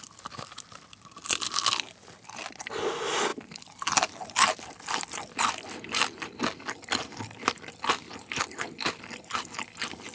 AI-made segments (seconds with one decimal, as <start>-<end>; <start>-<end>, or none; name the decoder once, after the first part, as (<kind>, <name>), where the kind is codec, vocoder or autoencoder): none